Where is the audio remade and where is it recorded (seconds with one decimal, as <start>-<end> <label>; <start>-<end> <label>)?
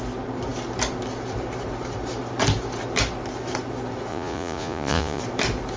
0.0-4.1 recorded; 4.1-5.2 remade; 5.2-5.8 recorded